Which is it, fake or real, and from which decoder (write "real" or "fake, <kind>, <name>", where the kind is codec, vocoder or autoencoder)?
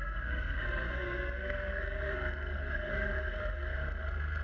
fake, codec, SNAC